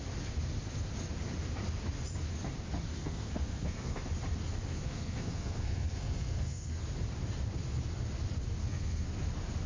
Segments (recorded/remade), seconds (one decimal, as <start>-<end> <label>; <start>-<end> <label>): 0.0-3.0 recorded; 3.0-4.0 remade; 4.0-4.7 recorded; 4.7-6.8 remade; 6.8-8.6 recorded; 8.6-9.1 remade; 9.1-9.7 recorded